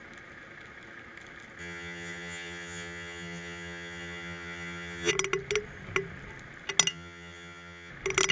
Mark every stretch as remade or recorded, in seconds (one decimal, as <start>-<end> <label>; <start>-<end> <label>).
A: 0.0-1.6 recorded; 1.6-5.1 remade; 5.1-6.9 recorded; 6.9-7.9 remade; 7.9-8.3 recorded